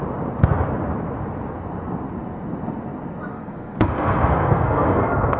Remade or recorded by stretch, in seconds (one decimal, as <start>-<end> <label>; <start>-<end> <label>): 0.0-3.3 recorded; 3.3-5.4 remade